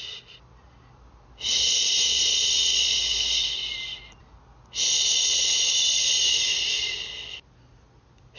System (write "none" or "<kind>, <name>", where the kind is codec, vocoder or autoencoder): none